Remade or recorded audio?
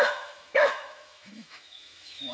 remade